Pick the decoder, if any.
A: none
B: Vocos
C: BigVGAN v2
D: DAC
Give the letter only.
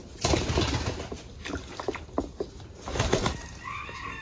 A